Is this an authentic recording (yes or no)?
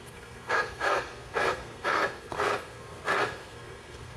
no